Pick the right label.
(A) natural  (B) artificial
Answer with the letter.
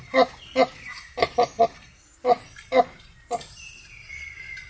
A